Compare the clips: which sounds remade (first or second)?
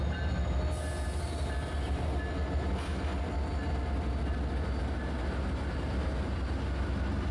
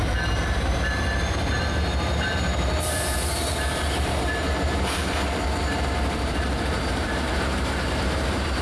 second